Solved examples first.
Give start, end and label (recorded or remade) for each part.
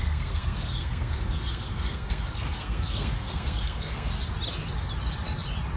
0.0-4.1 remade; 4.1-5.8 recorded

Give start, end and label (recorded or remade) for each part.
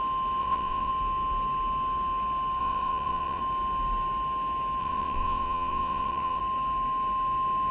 0.0-0.4 recorded; 0.4-0.9 remade; 0.9-2.6 recorded; 2.6-3.4 remade; 3.4-4.8 recorded; 4.8-6.4 remade; 6.4-7.7 recorded